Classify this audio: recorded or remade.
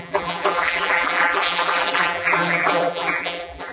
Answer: remade